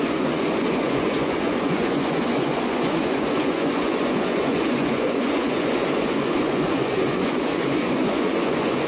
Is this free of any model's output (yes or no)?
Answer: no